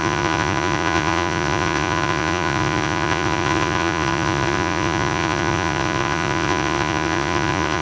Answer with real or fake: fake